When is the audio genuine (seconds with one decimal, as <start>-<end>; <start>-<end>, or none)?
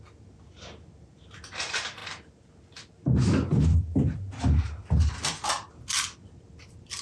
0.0-7.0